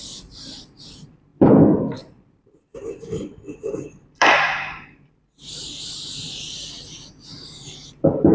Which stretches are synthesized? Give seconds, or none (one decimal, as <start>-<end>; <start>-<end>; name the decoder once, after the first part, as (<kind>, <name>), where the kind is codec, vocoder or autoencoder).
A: 0.0-8.3 (vocoder, BigVGAN v2)